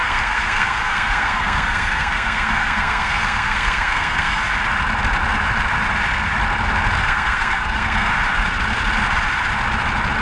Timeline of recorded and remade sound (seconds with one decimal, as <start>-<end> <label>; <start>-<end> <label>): 0.0-4.4 remade; 4.4-7.0 recorded; 7.0-8.1 remade; 8.1-10.2 recorded

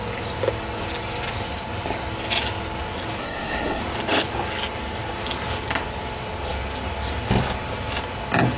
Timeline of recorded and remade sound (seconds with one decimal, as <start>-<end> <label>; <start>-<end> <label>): 0.0-3.2 recorded; 3.2-3.8 remade; 3.8-8.6 recorded

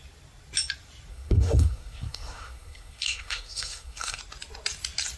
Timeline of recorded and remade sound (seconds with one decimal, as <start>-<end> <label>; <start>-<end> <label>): 0.0-1.1 recorded; 1.1-4.2 remade; 4.2-5.2 recorded

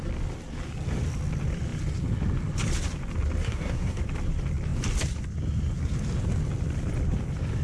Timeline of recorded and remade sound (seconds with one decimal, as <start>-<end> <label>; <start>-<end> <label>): 0.0-3.4 recorded; 3.4-4.0 remade; 4.0-7.6 recorded

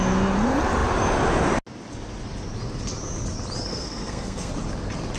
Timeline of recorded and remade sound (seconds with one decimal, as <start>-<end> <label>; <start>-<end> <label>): 0.0-3.7 recorded; 3.7-4.5 remade; 4.5-5.2 recorded